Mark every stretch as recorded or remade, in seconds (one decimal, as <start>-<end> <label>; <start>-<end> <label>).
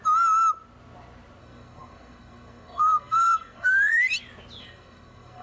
0.0-1.4 recorded; 1.4-4.0 remade; 4.0-4.6 recorded; 4.6-5.4 remade